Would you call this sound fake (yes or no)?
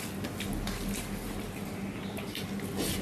no